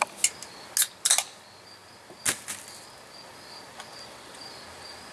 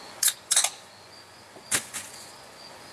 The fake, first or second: second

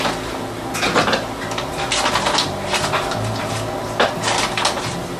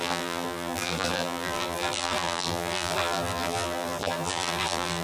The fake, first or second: second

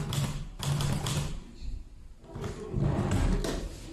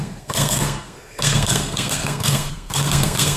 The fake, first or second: second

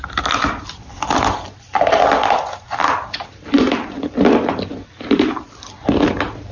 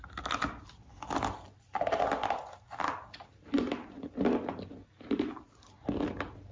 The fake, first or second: first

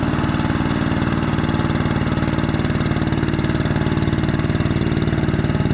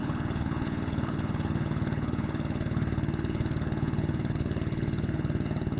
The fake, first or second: second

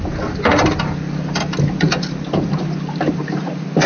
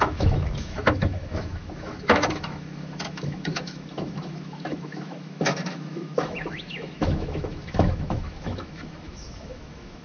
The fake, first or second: second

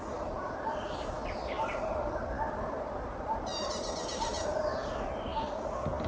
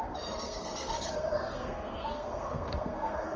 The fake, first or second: second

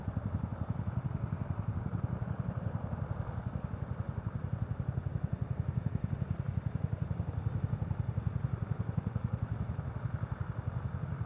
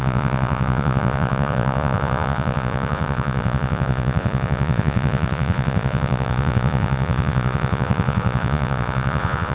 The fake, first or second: second